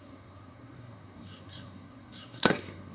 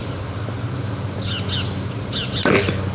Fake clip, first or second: first